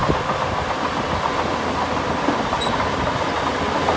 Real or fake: real